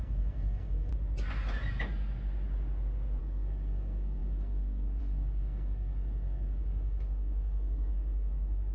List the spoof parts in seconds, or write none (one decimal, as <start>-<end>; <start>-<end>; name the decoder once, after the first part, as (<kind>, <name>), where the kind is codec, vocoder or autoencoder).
0.0-0.9 (codec, SNAC); 3.2-8.7